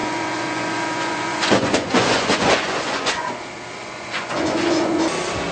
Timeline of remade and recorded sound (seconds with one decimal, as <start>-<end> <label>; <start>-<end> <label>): 0.0-3.3 remade; 3.3-3.8 recorded; 3.8-5.0 remade; 5.0-5.5 recorded